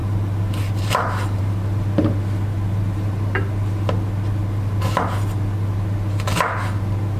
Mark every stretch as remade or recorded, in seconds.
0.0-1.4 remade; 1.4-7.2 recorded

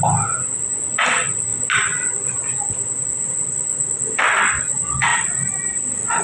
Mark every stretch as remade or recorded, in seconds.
0.0-5.1 recorded; 5.1-6.2 remade

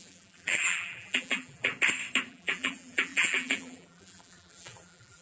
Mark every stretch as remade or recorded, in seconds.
0.0-1.7 remade; 1.7-2.3 recorded; 2.3-5.2 remade

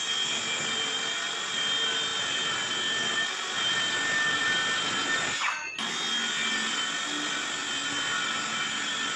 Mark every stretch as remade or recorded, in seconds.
0.0-9.2 recorded